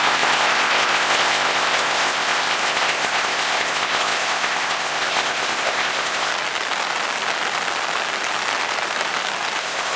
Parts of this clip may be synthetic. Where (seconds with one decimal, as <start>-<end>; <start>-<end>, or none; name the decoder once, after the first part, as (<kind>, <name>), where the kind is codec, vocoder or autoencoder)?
0.0-6.3 (codec, ZipCodec); 9.6-10.0